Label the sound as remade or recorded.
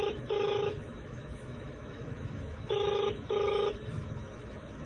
remade